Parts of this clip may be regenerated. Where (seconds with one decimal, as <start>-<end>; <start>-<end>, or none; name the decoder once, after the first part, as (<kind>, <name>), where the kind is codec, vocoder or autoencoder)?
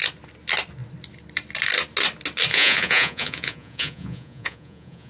2.5-5.1 (vocoder, Vocos)